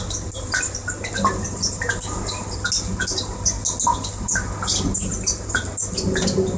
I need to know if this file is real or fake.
real